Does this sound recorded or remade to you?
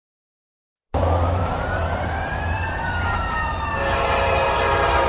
remade